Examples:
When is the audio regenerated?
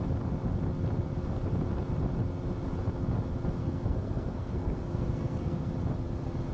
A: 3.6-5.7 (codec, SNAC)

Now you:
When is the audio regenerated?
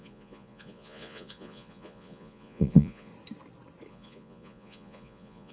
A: 0.0-3.1 (vocoder, Vocos); 3.9-5.5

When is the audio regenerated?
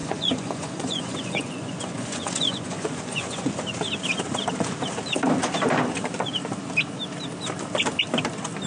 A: 0.0-3.5 (vocoder, Vocos)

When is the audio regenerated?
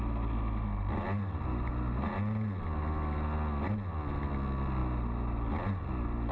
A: none